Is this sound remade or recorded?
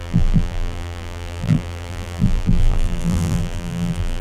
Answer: remade